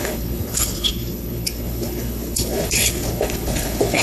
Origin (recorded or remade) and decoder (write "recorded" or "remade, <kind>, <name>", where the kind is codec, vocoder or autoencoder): remade, codec, HILCodec